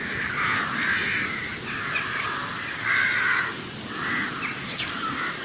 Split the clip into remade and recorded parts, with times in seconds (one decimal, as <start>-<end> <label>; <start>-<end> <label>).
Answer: 0.0-5.4 recorded